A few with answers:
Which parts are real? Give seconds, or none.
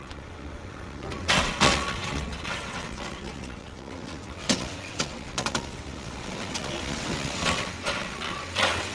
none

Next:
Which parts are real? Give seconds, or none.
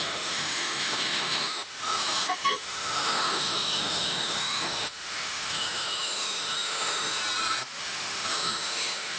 7.2-7.8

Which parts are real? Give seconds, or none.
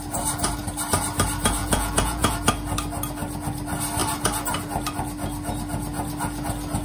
0.0-1.6; 2.3-6.8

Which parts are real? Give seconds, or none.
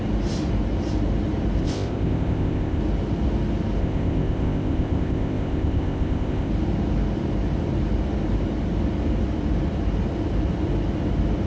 0.0-1.6; 2.8-3.8; 6.5-11.5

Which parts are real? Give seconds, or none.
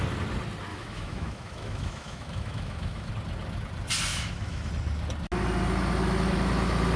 0.0-0.7; 3.1-4.1; 4.7-7.0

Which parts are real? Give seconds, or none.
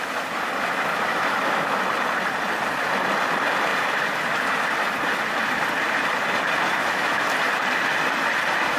0.0-0.9; 1.8-6.8; 7.3-8.8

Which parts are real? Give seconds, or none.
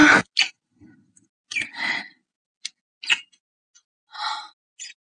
0.0-5.2